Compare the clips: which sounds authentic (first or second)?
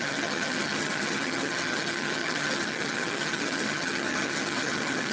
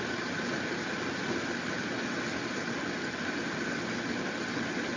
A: second